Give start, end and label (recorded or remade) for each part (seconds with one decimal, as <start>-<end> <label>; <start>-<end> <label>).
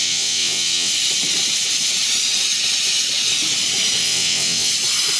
0.0-0.9 remade; 0.9-4.0 recorded; 4.0-4.7 remade; 4.7-5.2 recorded